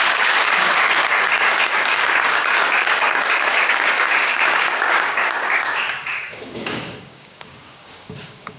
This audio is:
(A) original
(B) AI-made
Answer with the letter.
B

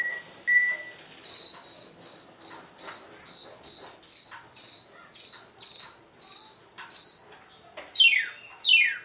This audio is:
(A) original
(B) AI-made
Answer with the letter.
A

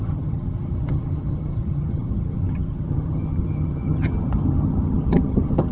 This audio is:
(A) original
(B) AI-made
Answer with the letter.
B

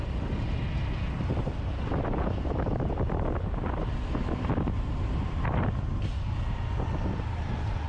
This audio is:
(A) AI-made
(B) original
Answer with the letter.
B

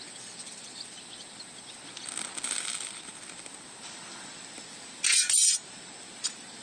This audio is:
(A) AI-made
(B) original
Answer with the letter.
B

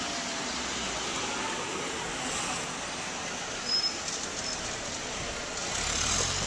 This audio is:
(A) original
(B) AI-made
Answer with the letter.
A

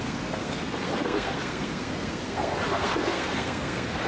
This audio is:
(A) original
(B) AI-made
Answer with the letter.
B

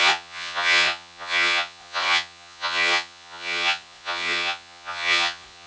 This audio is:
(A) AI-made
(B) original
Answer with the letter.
A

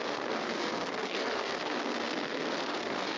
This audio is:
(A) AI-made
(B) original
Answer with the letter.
A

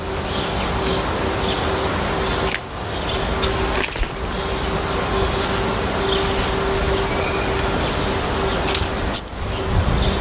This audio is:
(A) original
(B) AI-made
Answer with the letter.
A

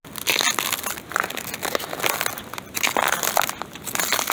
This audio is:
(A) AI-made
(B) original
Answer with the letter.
B